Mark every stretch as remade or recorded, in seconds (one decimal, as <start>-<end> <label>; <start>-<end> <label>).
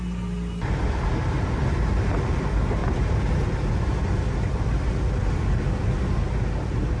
0.0-7.0 recorded